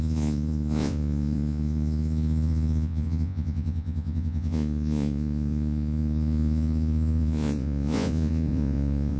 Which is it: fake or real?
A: fake